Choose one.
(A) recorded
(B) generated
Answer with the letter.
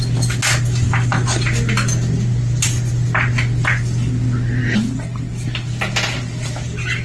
A